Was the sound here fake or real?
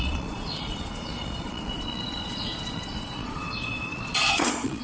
fake